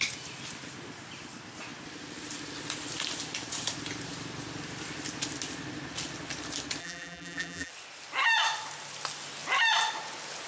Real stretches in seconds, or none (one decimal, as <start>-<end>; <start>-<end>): 0.0-6.8; 7.7-10.5